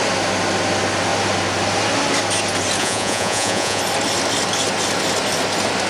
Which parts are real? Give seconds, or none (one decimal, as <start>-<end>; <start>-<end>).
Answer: 0.0-2.8; 3.8-5.9